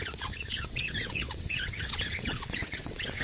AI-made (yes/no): yes